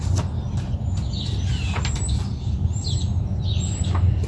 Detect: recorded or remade recorded